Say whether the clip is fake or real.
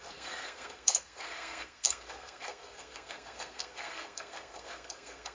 fake